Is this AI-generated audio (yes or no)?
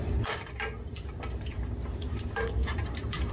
yes